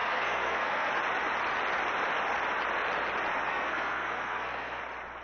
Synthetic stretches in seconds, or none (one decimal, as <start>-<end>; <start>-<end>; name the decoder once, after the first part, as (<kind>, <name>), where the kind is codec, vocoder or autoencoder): 0.0-0.9 (codec, SNAC); 3.5-4.8